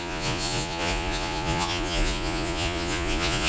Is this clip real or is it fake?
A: fake